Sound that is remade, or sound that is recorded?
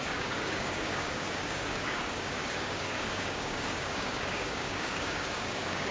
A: remade